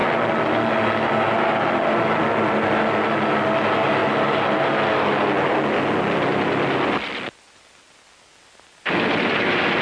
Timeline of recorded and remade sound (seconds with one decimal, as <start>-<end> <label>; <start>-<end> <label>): 0.0-9.8 recorded